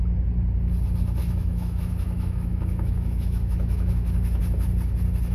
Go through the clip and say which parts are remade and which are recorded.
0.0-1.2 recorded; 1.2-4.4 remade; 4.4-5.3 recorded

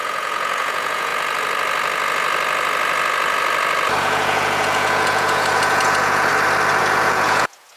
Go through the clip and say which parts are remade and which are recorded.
0.0-1.1 remade; 1.1-4.0 recorded; 4.0-6.3 remade; 6.3-6.8 recorded; 6.8-7.8 remade